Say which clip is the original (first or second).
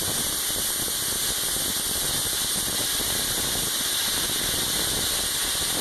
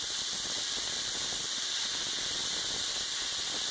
first